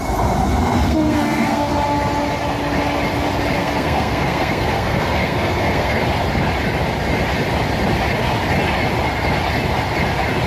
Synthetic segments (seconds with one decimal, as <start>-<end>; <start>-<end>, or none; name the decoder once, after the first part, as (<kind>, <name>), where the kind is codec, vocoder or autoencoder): 0.6-1.7 (codec, SNAC); 3.6-6.0